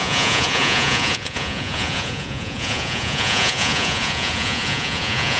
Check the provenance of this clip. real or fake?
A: fake